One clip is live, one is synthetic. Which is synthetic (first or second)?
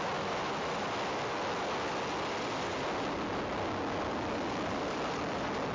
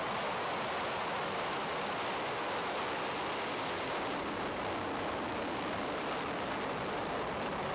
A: second